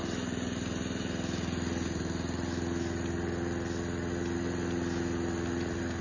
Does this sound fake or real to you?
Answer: real